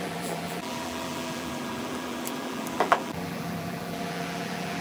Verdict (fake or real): fake